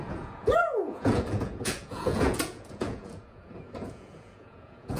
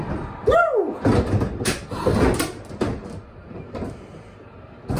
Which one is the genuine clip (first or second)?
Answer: second